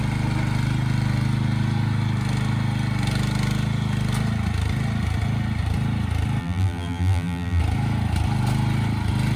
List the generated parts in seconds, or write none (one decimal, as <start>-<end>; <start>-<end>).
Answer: 6.4-7.6